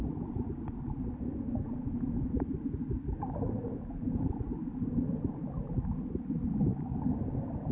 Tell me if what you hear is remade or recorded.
recorded